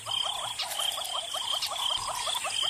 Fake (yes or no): no